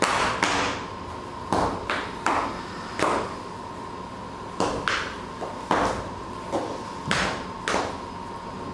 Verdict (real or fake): real